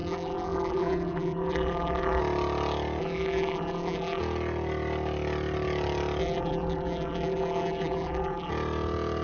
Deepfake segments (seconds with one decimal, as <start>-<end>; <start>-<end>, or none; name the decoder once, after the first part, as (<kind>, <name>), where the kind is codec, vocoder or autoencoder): 0.0-2.2 (vocoder, BigVGAN v2); 3.0-4.2; 6.2-8.5